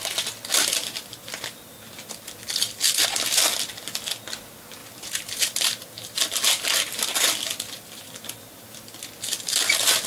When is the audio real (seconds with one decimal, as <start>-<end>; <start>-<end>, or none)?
0.0-4.8; 6.4-10.1